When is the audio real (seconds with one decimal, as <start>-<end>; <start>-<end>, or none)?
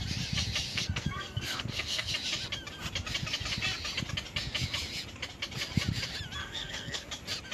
0.0-0.7; 2.1-6.4; 7.1-7.5